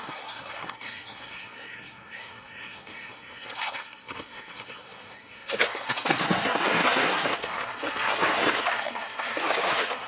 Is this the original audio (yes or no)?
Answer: no